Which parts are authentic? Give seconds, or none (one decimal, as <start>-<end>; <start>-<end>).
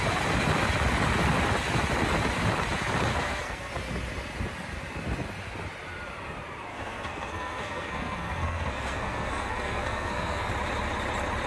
0.0-3.1; 3.7-6.7; 10.5-11.5